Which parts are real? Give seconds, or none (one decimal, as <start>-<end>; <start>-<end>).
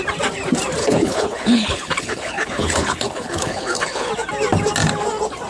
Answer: 0.0-0.8; 4.1-5.5